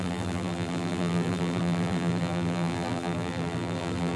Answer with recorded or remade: remade